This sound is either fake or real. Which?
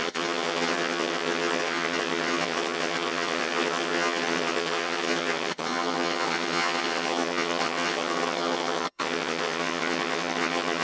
fake